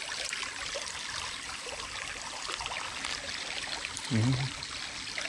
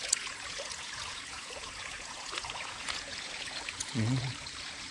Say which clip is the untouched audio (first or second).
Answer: first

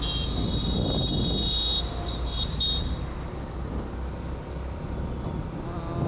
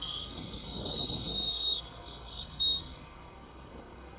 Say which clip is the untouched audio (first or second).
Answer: first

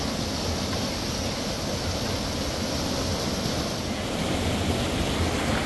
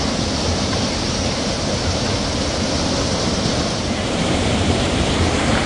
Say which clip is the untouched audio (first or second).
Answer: first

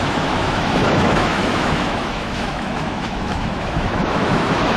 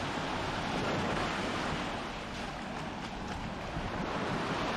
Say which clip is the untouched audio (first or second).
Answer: second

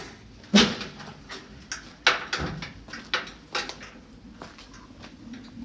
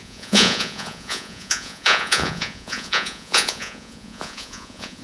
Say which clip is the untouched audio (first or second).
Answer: first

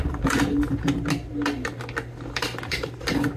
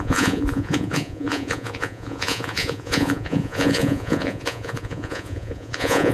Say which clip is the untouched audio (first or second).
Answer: first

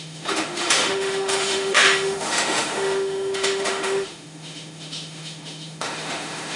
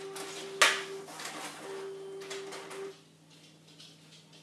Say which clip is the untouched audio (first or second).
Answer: second